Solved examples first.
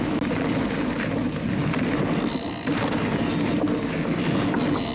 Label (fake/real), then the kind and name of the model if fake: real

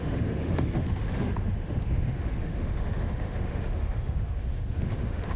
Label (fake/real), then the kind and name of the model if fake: fake, autoencoder, DAC-VAE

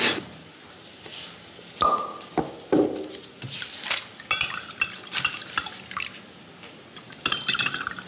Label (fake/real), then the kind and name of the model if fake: real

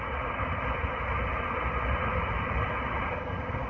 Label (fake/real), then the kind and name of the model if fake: real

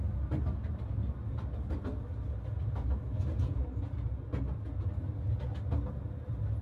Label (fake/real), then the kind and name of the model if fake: real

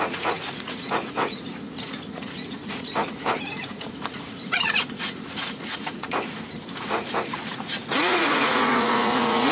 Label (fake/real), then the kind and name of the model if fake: fake, vocoder, Vocos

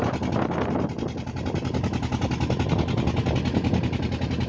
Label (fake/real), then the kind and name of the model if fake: real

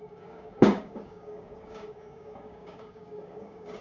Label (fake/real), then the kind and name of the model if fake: fake, codec, DAC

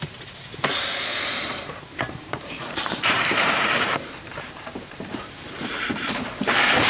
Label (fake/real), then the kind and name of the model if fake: fake, vocoder, BigVGAN v2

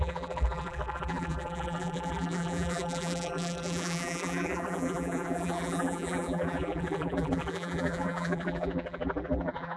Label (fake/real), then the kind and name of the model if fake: fake, vocoder, BigVGAN v2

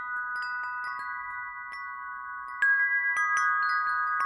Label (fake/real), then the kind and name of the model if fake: real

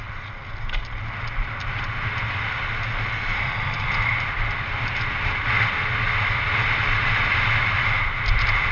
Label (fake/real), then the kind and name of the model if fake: real